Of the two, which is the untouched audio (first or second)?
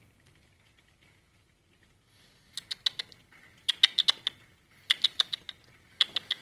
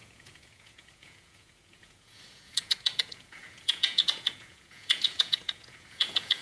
first